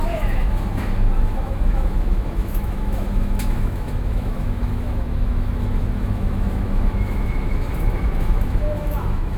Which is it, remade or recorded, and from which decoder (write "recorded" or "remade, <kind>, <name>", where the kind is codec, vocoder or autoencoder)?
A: remade, autoencoder, DAC-VAE